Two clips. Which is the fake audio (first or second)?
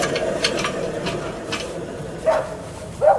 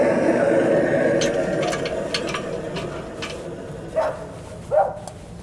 first